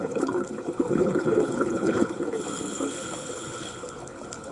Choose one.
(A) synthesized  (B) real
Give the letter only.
A